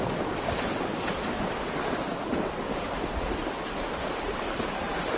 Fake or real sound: real